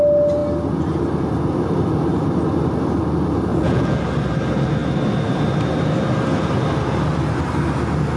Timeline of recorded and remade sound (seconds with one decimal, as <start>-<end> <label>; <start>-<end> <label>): 0.0-3.5 recorded; 3.5-4.0 remade; 4.0-8.2 recorded